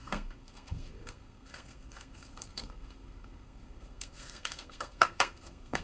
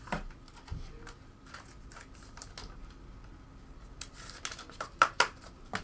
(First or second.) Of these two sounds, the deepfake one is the first